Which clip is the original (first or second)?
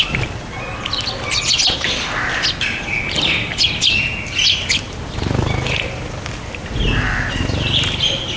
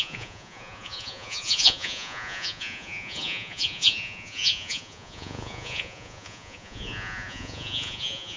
first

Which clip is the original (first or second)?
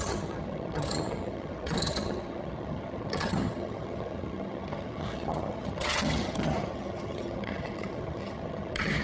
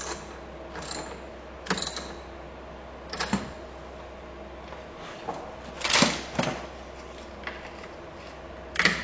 second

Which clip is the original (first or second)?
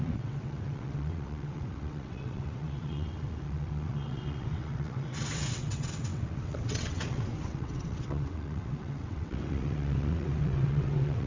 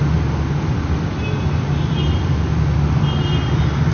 second